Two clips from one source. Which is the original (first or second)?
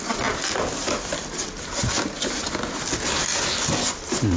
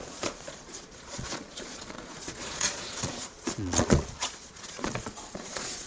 first